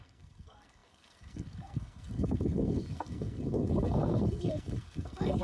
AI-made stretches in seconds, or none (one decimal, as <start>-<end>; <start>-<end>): 0.0-5.4